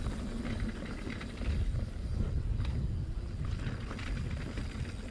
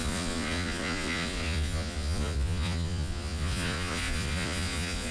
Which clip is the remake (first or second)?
second